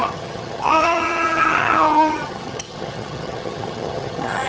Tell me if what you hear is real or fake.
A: fake